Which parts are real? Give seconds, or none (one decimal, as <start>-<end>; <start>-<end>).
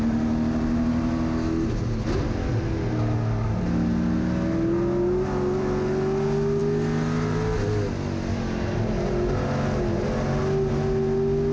0.0-11.5